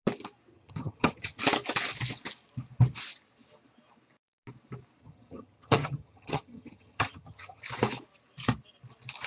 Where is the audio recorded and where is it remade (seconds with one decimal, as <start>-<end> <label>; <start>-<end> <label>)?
0.0-0.5 recorded; 0.5-1.4 remade; 1.4-5.0 recorded; 5.0-7.6 remade; 7.6-9.3 recorded